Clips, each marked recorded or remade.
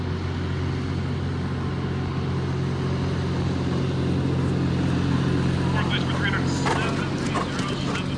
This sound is recorded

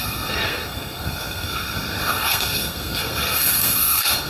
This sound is remade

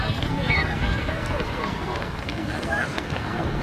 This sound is remade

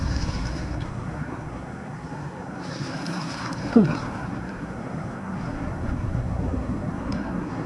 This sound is remade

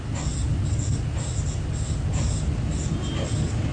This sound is recorded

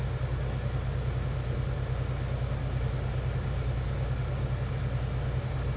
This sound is recorded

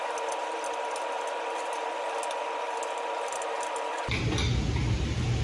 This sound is recorded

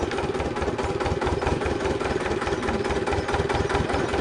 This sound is recorded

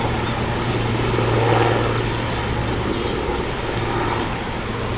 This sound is recorded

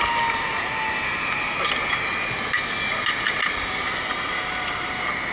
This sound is recorded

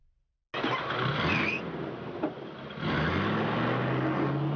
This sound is recorded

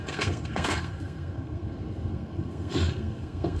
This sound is remade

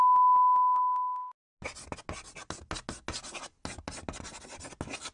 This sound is recorded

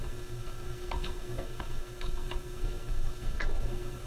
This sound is remade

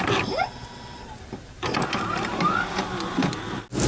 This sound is recorded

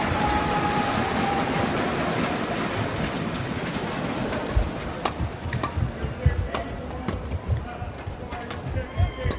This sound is recorded